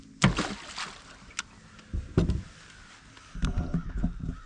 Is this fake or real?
real